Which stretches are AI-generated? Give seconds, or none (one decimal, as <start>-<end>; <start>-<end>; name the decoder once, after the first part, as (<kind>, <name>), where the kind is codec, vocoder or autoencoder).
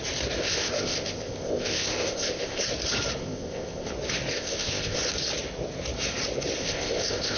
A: 0.4-2.6 (codec, ZipCodec); 3.2-3.9; 4.3-5.0; 6.6-7.4